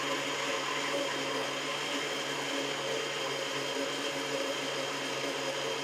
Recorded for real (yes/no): yes